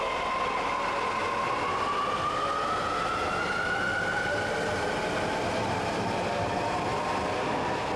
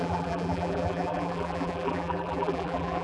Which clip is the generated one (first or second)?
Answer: second